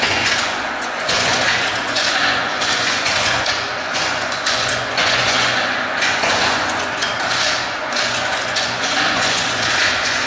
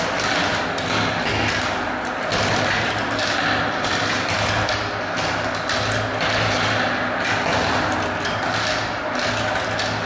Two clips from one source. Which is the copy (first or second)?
first